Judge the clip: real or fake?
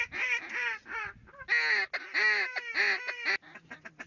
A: real